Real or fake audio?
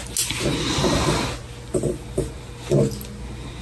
real